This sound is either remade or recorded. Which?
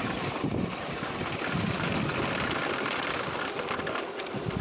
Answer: recorded